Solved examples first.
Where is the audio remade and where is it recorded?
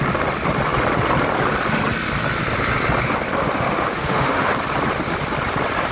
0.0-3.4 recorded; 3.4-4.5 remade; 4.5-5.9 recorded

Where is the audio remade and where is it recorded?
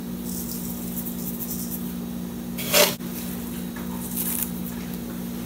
0.0-5.5 recorded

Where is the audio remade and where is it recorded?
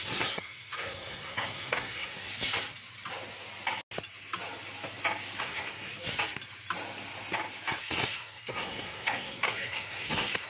0.0-2.3 remade; 2.3-5.4 recorded; 5.4-5.9 remade; 5.9-7.8 recorded; 7.8-10.5 remade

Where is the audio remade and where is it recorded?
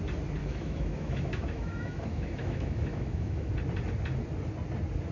0.0-0.4 recorded; 0.4-3.5 remade; 3.5-5.1 recorded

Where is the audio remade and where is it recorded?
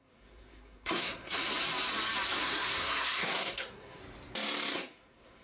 0.0-1.4 remade; 1.4-2.4 recorded; 2.4-4.0 remade; 4.0-4.7 recorded; 4.7-5.4 remade